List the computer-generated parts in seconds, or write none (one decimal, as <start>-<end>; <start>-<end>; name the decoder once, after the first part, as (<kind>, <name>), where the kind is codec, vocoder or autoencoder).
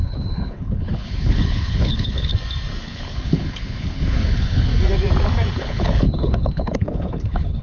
0.0-2.3 (codec, HILCodec); 2.8-4.7; 5.5-7.6